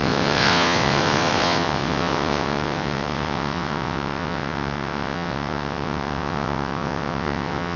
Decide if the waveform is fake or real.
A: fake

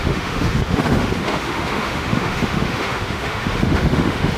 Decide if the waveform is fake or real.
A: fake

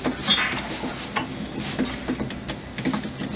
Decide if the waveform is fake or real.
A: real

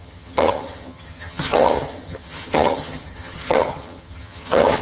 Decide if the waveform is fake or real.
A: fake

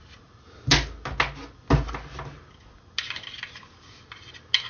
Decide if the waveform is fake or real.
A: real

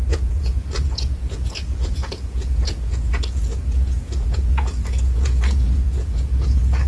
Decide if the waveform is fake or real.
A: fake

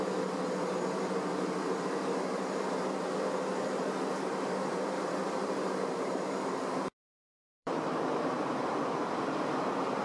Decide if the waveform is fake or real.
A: fake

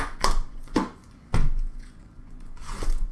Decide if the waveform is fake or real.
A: fake